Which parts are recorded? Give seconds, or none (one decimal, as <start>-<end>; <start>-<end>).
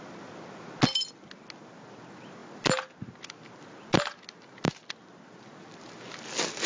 0.0-6.7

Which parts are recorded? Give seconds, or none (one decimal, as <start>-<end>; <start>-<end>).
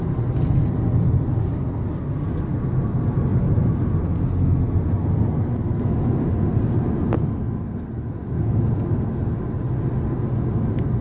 0.0-11.0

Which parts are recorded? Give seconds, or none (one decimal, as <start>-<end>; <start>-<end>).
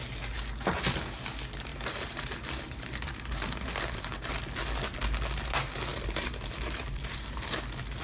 0.0-1.7; 4.3-5.9; 7.5-8.0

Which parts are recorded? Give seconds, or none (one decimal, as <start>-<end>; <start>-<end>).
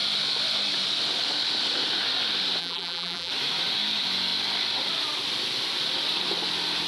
0.0-2.6; 3.3-6.9